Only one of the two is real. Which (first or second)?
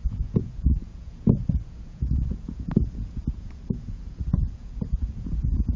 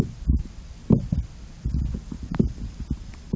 second